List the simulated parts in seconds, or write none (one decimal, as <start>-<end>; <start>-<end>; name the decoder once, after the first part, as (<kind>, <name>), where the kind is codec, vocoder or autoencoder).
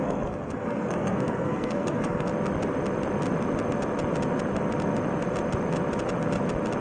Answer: 0.0-2.3 (codec, SNAC)